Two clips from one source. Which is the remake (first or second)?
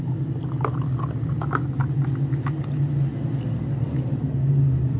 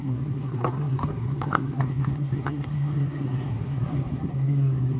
second